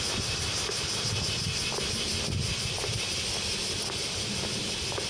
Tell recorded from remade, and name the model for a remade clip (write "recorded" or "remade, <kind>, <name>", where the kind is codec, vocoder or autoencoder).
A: recorded